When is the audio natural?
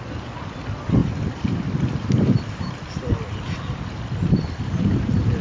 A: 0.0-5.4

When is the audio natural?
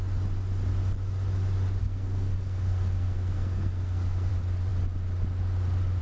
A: 0.0-1.8; 4.3-6.0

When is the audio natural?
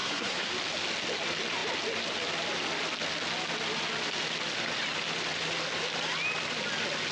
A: 0.5-7.1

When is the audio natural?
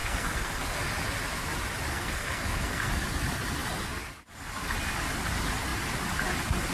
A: 0.8-1.9; 2.9-6.7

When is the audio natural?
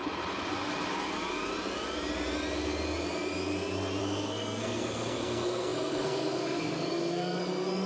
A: 0.0-4.0